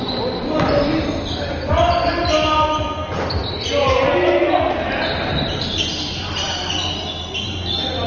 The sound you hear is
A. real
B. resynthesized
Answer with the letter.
A